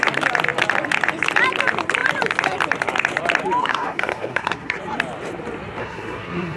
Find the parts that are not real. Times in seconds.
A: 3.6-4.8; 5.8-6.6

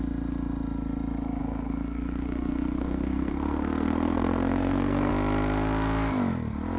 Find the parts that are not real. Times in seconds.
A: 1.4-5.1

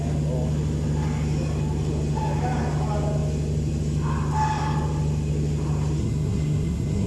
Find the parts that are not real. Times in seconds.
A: 6.0-7.1